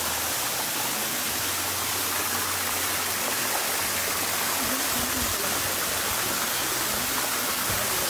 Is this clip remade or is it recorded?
recorded